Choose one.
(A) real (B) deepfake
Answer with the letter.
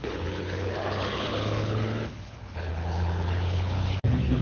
B